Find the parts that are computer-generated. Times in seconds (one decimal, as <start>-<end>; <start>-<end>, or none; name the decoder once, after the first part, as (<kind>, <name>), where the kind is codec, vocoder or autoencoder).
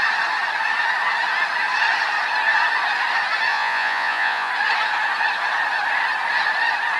3.5-4.5 (vocoder, Vocos)